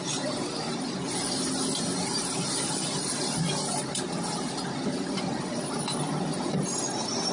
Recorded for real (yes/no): yes